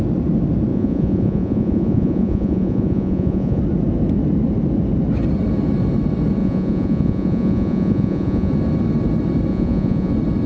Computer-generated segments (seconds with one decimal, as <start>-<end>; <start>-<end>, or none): 0.7-3.6; 6.4-8.5; 9.5-10.1